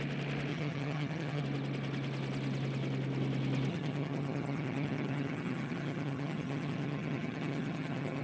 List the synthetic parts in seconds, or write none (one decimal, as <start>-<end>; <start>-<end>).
0.5-1.4; 3.7-8.2